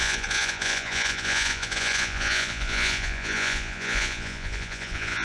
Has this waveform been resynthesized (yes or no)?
yes